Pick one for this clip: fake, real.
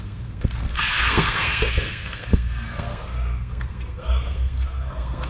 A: fake